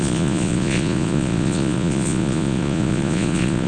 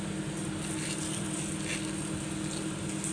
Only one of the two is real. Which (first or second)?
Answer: second